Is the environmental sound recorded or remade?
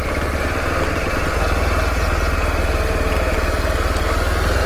recorded